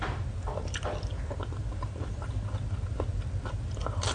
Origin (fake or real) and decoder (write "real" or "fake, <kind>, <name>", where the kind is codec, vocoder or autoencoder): real